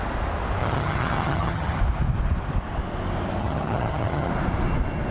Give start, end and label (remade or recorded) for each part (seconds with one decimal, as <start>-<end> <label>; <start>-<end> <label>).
0.0-0.6 recorded; 0.6-1.8 remade; 1.8-3.4 recorded; 3.4-4.3 remade; 4.3-5.1 recorded